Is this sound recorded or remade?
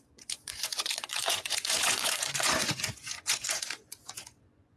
remade